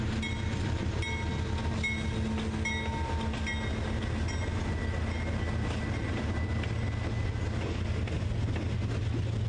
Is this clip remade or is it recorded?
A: recorded